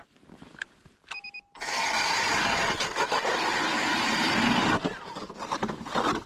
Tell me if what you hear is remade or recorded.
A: recorded